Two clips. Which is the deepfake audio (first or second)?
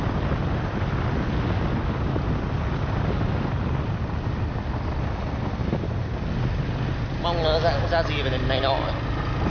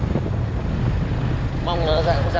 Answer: second